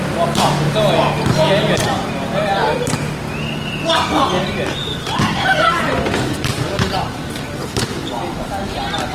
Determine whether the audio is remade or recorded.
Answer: recorded